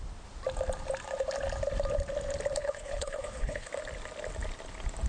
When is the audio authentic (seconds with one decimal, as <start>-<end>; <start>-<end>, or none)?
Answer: 0.0-2.6; 3.7-5.1